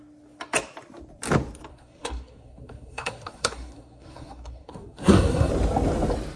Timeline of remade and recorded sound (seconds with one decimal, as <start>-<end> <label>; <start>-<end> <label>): 0.0-1.7 recorded; 1.7-5.5 remade; 5.5-6.4 recorded